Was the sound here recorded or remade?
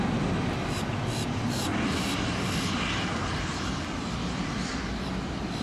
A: recorded